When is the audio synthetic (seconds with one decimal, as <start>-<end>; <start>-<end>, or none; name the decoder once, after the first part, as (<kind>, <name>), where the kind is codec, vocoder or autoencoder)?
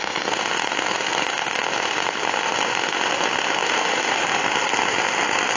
3.6-4.4 (autoencoder, DAC-VAE)